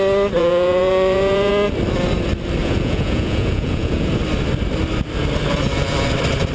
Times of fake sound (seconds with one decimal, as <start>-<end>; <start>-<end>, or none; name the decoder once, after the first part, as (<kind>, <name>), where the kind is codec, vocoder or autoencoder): 0.4-1.5 (vocoder, Vocos); 2.6-4.1